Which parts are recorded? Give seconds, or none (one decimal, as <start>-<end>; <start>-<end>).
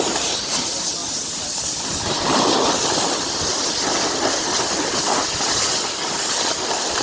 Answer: 0.0-7.0